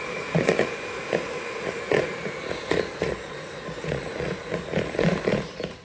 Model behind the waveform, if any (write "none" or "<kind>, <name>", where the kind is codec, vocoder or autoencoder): vocoder, Vocos